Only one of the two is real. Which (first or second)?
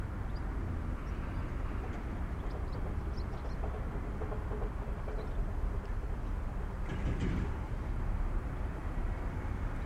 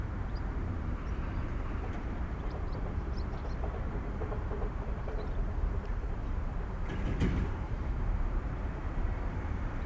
first